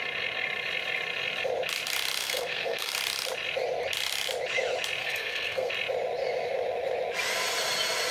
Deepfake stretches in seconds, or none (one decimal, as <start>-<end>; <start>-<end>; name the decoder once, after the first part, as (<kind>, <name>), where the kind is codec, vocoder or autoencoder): 2.2-2.9 (codec, SNAC); 5.0-5.7